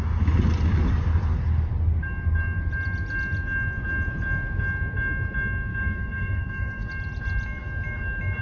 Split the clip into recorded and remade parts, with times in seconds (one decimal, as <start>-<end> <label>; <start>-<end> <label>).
0.0-5.7 recorded; 5.7-6.9 remade; 6.9-8.4 recorded